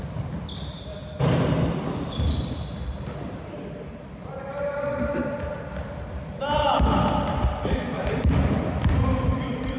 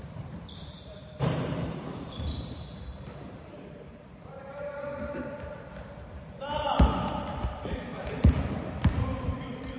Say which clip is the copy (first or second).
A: second